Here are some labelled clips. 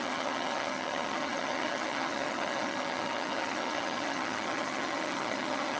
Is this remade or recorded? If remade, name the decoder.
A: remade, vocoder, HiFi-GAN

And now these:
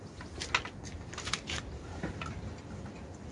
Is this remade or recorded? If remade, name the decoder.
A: recorded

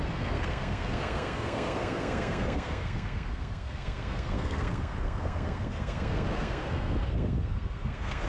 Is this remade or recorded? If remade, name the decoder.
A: remade, codec, SNAC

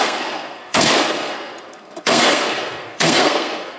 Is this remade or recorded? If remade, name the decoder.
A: remade, codec, SNAC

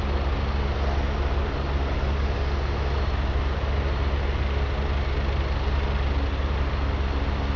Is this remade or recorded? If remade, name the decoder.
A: recorded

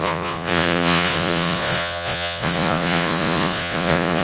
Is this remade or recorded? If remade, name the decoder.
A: remade, vocoder, Vocos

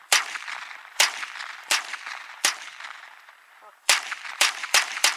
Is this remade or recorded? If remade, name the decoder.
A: remade, vocoder, BigVGAN v2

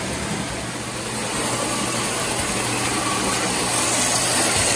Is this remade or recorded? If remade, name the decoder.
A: recorded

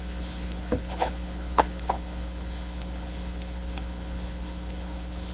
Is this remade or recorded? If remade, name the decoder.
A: remade, codec, HILCodec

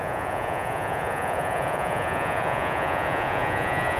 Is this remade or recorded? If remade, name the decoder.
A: remade, vocoder, Vocos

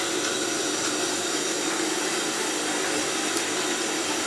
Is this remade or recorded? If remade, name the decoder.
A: recorded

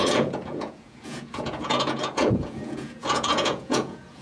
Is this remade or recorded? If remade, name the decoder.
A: remade, vocoder, Vocos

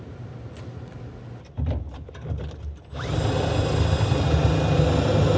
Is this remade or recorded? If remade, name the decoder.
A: recorded